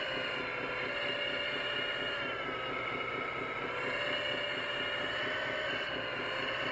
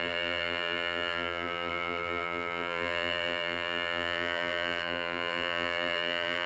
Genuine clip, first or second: first